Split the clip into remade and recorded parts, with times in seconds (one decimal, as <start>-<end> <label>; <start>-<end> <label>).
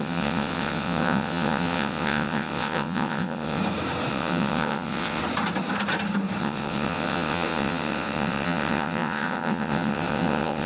0.0-3.6 remade; 3.6-4.1 recorded; 4.1-5.2 remade; 5.2-6.4 recorded; 6.4-10.7 remade